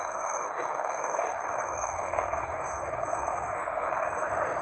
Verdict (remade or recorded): remade